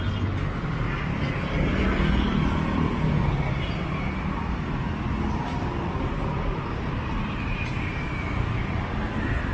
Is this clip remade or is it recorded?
recorded